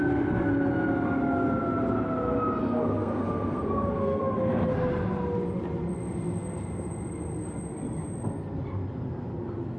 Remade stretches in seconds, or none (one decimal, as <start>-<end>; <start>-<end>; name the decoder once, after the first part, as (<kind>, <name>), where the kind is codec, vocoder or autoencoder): 2.6-4.7 (codec, SNAC)